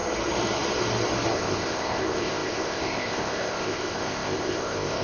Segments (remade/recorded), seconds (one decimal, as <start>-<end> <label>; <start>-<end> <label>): 0.0-1.3 recorded; 1.3-5.0 remade